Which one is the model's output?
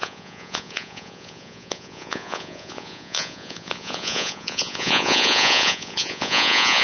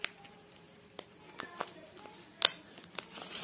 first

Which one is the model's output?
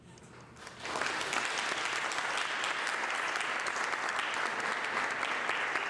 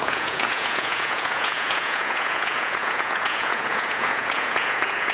second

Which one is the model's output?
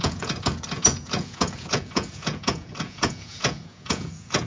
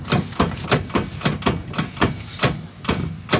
first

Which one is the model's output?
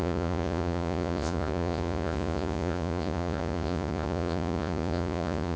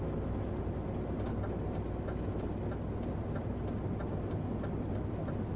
first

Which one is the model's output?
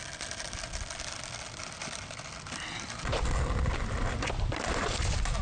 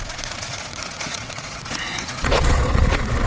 second